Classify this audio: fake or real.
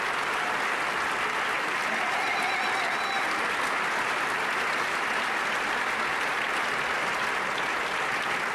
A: real